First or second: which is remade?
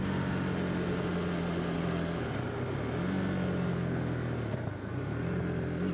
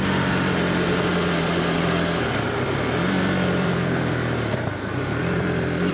second